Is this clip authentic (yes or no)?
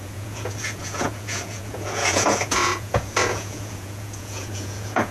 no